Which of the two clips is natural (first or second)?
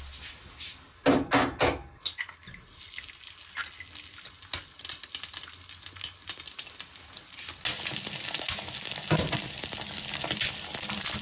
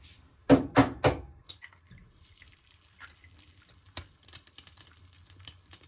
first